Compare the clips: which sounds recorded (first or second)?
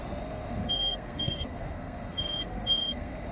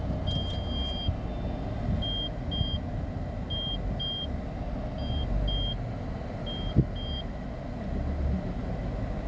second